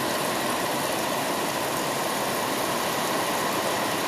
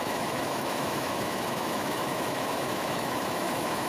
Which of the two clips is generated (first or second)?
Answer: second